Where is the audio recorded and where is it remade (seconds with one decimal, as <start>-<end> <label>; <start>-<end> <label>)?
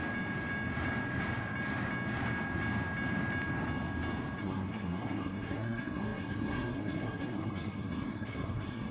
0.0-4.4 recorded; 4.4-8.9 remade